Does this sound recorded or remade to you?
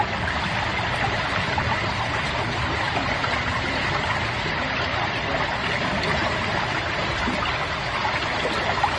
recorded